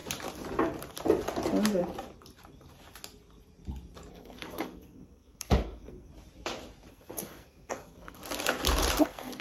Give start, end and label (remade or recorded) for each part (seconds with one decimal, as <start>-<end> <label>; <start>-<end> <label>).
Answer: 0.0-4.1 recorded; 4.1-6.1 remade; 6.1-6.9 recorded; 6.9-8.2 remade; 8.2-9.0 recorded; 9.0-9.4 remade